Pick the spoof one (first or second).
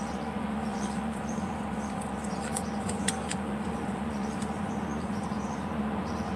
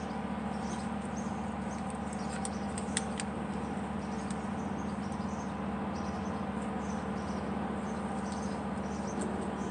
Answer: first